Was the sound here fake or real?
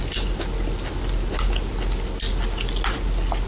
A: real